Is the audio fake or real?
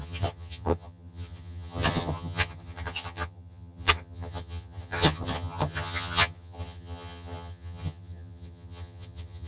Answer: fake